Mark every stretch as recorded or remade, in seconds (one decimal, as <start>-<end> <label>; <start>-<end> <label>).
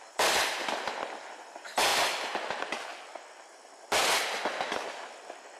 0.0-5.6 recorded